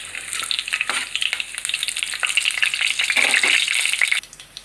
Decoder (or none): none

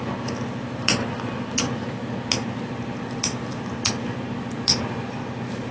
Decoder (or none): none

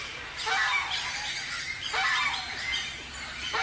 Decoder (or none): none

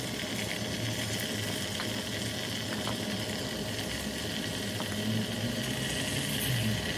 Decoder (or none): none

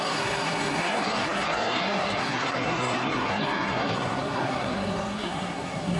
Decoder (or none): codec, SNAC